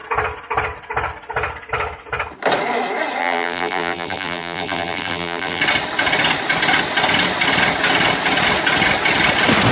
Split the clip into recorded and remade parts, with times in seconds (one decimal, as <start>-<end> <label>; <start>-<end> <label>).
0.0-3.2 recorded; 3.2-5.6 remade; 5.6-9.7 recorded